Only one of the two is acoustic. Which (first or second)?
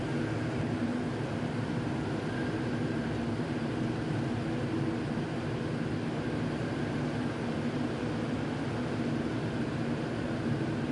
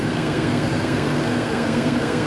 first